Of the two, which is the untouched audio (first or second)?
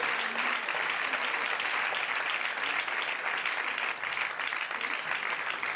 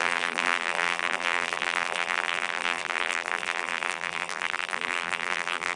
first